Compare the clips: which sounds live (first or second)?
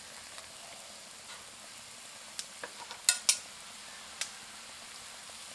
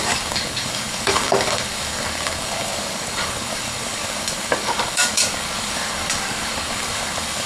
first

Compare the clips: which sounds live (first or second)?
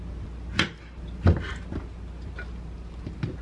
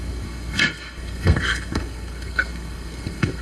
first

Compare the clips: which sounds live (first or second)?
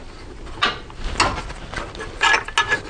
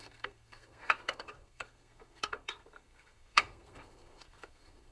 first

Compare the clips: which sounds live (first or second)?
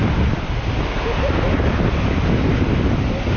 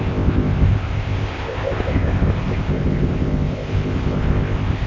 first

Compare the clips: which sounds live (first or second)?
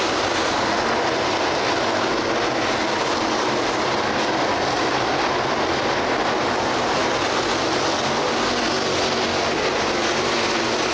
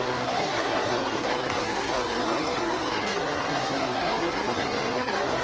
first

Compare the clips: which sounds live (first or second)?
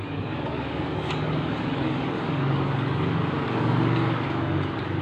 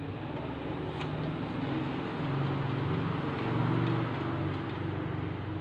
second